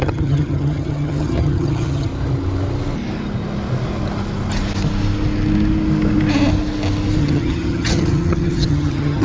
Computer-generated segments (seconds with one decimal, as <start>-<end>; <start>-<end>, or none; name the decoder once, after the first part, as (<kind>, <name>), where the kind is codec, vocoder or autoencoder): 0.0-2.1 (vocoder, HiFi-GAN); 7.2-9.2